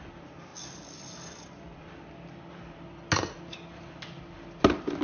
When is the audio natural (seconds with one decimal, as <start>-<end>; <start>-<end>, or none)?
0.0-5.0